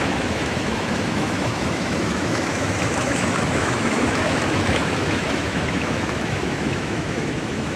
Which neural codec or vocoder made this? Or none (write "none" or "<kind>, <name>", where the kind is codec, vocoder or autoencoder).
autoencoder, DAC-VAE